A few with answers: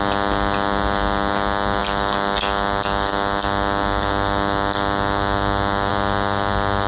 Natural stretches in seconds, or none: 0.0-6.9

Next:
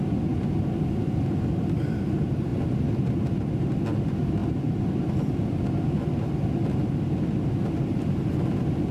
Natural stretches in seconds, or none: 0.0-8.9